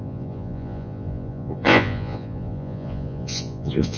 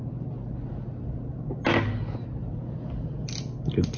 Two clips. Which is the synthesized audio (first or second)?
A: first